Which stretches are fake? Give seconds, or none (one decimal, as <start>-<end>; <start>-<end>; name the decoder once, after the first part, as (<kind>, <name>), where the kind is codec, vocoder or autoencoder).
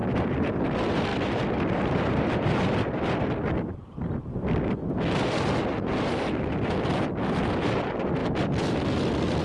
none